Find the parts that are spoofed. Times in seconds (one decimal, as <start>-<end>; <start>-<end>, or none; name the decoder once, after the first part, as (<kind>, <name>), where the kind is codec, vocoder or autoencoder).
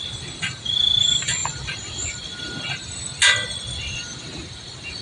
none